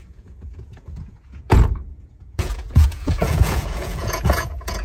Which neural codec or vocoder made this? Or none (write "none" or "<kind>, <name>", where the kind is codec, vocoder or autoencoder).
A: vocoder, Vocos